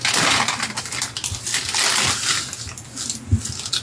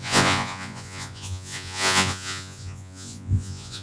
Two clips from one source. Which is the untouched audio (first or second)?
first